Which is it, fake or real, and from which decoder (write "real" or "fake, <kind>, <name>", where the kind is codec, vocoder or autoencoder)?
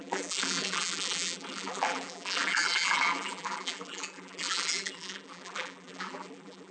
fake, vocoder, BigVGAN v2